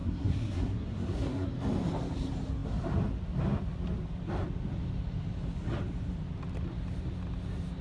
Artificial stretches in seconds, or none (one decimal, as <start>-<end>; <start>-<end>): 0.0-1.5